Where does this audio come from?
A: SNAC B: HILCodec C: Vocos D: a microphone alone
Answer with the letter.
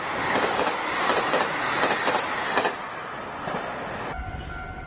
D